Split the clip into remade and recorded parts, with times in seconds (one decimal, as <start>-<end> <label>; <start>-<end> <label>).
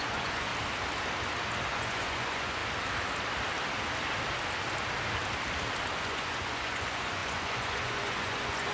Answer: 0.0-0.5 remade; 0.5-1.7 recorded; 1.7-2.6 remade; 2.6-6.0 recorded; 6.0-8.7 remade